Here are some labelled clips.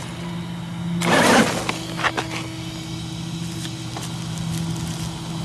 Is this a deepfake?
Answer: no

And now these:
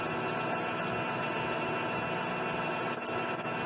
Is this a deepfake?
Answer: no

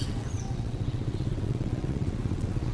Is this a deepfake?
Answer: yes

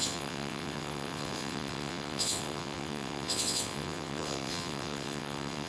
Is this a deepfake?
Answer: yes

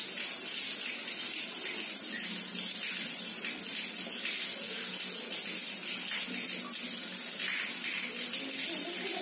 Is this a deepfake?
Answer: no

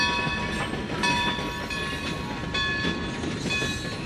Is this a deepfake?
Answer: no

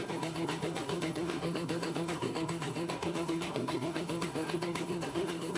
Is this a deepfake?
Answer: yes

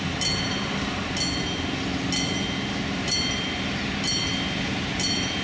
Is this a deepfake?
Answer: no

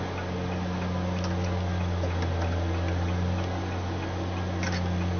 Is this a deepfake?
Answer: no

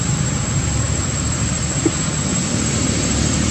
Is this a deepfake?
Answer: yes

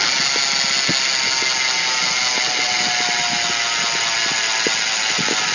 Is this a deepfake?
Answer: no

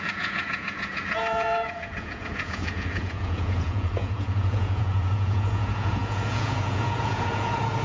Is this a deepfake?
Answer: yes